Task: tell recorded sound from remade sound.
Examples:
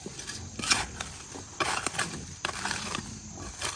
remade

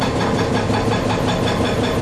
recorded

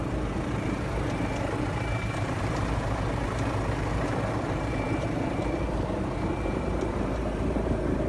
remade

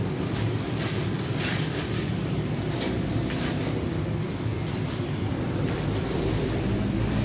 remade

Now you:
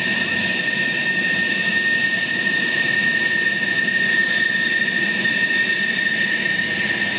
recorded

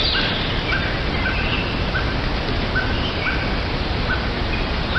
recorded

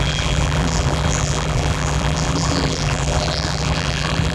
remade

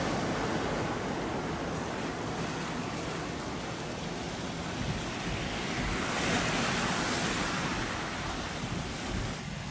recorded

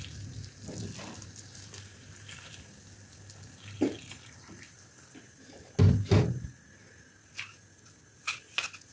recorded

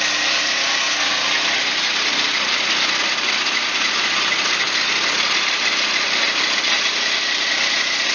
remade